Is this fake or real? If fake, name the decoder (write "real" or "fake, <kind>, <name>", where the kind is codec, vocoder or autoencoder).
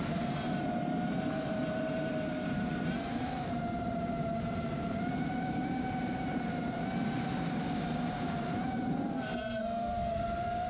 fake, vocoder, BigVGAN v2